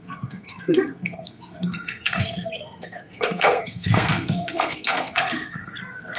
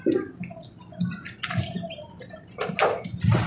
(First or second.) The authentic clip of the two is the second